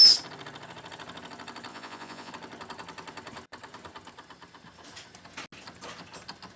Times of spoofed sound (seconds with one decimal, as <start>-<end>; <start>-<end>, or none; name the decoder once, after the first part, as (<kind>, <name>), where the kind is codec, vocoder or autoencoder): 1.7-2.3 (vocoder, Vocos)